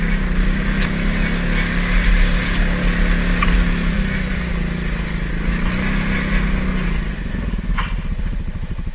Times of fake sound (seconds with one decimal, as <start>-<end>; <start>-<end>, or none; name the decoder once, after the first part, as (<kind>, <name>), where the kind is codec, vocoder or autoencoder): none